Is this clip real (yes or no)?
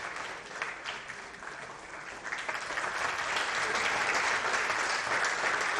yes